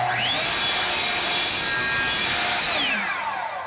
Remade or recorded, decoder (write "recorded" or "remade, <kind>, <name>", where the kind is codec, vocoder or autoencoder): recorded